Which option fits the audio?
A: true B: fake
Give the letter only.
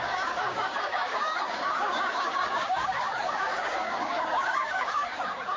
B